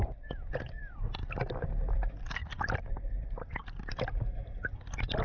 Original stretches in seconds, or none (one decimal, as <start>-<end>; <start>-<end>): 1.2-1.9